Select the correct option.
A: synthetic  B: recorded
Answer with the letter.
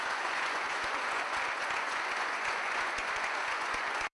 A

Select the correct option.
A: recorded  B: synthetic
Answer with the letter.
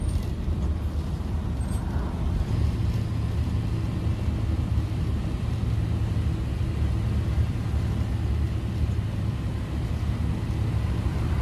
A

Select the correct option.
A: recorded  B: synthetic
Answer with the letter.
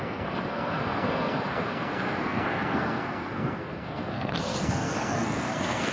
B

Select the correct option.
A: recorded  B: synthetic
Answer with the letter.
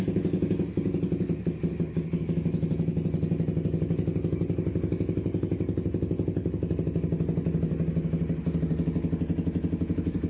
A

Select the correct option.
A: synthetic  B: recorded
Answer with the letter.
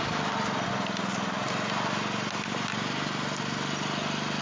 B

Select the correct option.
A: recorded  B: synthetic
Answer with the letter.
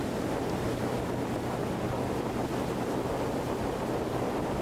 A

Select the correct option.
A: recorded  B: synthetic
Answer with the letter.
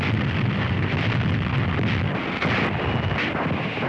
A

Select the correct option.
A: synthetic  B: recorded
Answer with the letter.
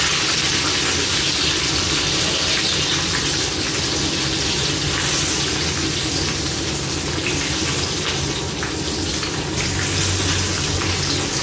B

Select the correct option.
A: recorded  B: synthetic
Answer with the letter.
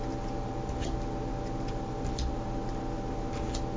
A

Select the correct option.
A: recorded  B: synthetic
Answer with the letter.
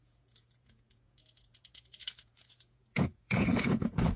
B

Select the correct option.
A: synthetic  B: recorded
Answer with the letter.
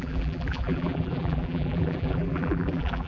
A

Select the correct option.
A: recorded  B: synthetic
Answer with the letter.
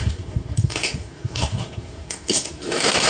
B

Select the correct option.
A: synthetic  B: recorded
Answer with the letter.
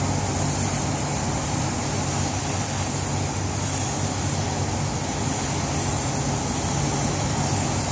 B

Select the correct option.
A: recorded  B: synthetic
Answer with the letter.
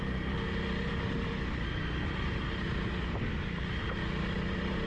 A